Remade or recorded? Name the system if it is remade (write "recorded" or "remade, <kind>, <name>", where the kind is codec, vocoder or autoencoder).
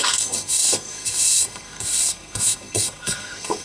remade, codec, SNAC